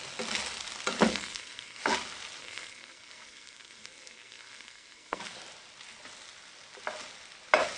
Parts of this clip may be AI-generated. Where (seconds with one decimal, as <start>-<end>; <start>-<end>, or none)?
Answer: 1.1-1.8; 2.4-5.2